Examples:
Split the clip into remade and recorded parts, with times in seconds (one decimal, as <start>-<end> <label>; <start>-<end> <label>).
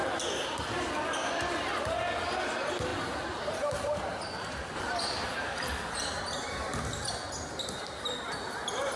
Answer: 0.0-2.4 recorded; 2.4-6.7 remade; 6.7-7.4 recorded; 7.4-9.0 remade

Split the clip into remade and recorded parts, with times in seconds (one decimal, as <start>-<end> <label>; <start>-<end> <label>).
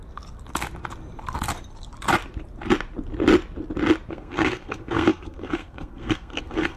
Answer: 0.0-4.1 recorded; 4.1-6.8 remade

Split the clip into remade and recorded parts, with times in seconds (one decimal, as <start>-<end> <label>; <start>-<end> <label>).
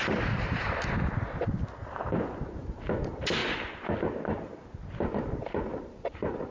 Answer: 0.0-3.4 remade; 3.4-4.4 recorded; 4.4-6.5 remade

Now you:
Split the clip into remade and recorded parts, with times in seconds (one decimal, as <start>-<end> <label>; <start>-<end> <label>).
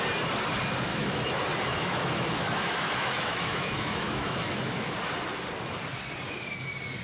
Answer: 0.0-0.9 recorded; 0.9-4.9 remade; 4.9-7.0 recorded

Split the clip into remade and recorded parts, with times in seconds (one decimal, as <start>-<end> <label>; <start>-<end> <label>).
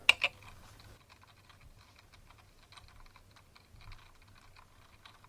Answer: 0.0-5.3 recorded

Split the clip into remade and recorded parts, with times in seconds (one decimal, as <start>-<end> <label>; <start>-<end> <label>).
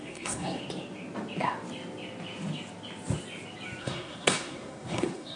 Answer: 0.0-0.6 remade; 0.6-3.8 recorded; 3.8-5.4 remade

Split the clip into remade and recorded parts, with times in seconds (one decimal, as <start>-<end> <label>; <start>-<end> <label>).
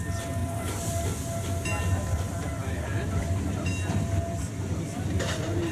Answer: 0.0-0.4 recorded; 0.4-0.9 remade; 0.9-5.7 recorded